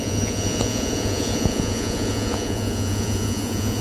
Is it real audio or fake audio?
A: fake